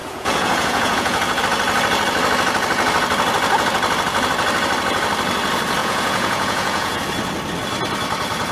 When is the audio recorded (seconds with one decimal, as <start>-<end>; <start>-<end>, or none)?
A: 1.4-5.8; 7.0-8.5